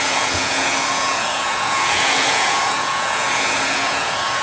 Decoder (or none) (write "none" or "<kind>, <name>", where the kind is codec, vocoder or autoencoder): vocoder, Vocos